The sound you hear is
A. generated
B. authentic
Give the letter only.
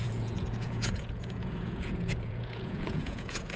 A